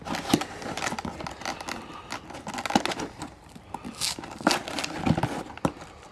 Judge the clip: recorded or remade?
recorded